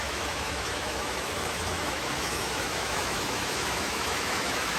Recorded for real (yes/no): no